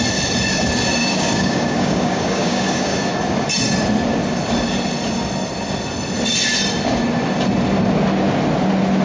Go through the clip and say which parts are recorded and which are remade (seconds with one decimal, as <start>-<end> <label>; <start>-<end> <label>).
0.0-1.0 recorded; 1.0-3.1 remade; 3.1-9.0 recorded